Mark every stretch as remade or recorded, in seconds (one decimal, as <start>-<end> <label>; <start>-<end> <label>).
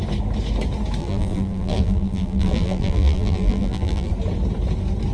0.0-1.0 recorded; 1.0-4.1 remade; 4.1-5.1 recorded